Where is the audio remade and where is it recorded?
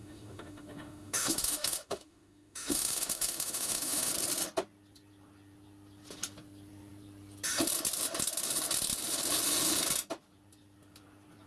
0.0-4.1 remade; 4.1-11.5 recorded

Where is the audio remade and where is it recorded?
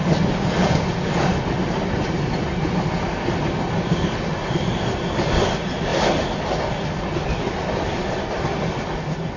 0.0-9.4 recorded